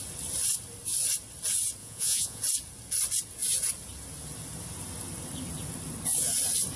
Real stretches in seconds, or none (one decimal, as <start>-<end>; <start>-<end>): 0.0-1.8; 2.4-6.8